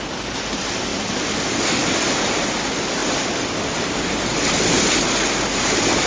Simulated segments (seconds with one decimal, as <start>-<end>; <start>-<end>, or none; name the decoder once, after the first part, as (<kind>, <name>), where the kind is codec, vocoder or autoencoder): none